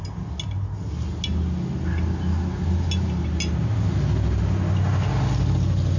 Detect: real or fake real